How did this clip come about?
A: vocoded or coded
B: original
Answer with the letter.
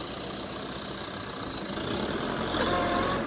B